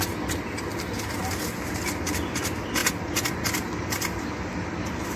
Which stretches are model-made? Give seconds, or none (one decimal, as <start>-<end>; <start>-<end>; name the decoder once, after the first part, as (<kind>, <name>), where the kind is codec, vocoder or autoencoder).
none